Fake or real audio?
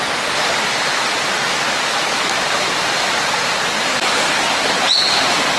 fake